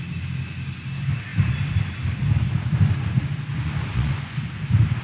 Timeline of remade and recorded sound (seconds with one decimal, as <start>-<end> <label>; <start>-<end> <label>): 0.0-3.5 recorded; 3.5-4.4 remade; 4.4-5.0 recorded